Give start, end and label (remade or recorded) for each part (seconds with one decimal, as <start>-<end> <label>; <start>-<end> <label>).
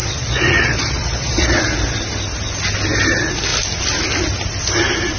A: 0.0-1.6 remade; 1.6-5.2 recorded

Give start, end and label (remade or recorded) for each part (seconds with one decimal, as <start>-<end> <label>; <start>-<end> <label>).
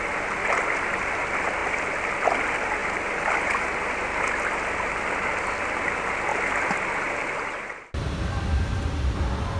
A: 0.0-9.6 recorded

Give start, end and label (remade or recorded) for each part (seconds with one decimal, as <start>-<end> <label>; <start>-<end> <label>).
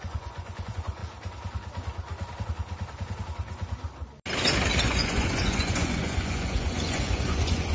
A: 0.0-1.0 remade; 1.0-4.8 recorded; 4.8-7.7 remade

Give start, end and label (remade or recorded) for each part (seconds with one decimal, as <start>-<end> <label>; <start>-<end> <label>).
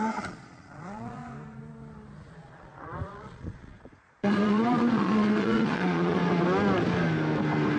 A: 0.0-1.2 remade; 1.2-2.3 recorded; 2.3-6.2 remade; 6.2-7.8 recorded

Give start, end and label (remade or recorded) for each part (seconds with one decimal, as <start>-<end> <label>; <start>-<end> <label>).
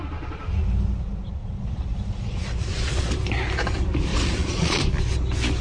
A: 0.0-1.4 recorded; 1.4-3.1 remade; 3.1-4.1 recorded; 4.1-4.8 remade; 4.8-5.6 recorded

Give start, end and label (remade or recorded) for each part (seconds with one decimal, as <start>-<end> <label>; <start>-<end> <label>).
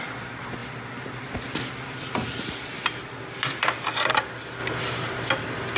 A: 0.0-5.8 recorded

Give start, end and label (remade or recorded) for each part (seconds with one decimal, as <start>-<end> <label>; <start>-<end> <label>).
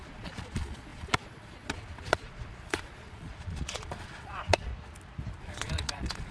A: 0.0-4.7 remade; 4.7-5.4 recorded; 5.4-6.3 remade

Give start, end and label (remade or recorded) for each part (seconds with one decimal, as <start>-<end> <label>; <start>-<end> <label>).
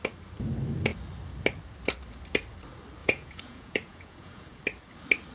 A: 0.0-3.0 recorded; 3.0-4.6 remade; 4.6-5.3 recorded